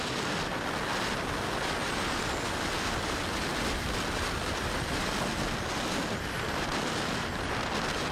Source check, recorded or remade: recorded